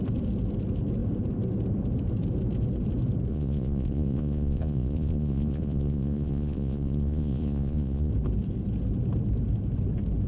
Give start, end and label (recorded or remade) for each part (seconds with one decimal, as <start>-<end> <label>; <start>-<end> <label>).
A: 0.0-3.3 recorded; 3.3-8.1 remade; 8.1-10.3 recorded

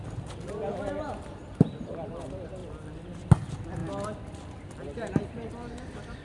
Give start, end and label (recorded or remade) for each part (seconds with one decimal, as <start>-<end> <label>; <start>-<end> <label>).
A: 0.0-3.8 recorded; 3.8-5.7 remade; 5.7-6.2 recorded

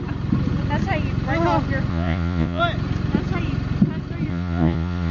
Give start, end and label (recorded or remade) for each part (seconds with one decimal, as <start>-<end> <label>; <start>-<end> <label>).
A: 0.0-1.9 recorded; 1.9-2.6 remade; 2.6-4.3 recorded; 4.3-5.1 remade

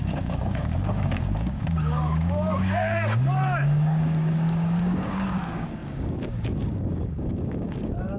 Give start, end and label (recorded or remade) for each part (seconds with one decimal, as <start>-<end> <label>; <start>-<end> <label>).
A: 0.0-8.2 remade